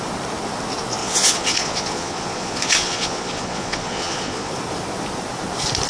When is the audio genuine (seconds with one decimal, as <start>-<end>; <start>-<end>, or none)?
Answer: 0.0-1.0; 4.5-5.9